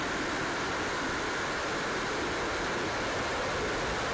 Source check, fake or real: real